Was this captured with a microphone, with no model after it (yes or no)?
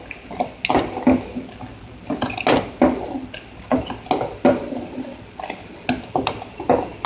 yes